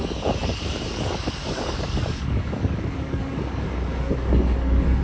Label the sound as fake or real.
fake